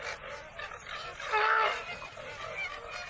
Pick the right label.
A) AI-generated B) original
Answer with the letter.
B